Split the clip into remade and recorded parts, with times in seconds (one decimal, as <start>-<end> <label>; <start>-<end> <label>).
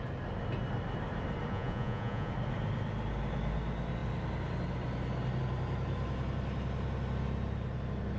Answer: 0.0-1.5 recorded; 1.5-2.3 remade; 2.3-8.2 recorded